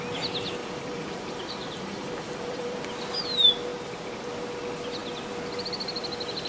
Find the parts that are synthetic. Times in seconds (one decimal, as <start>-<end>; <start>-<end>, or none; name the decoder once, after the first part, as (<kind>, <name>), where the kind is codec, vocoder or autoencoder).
0.6-2.8 (vocoder, BigVGAN v2)